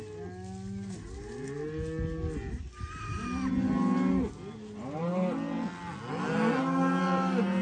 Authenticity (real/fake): real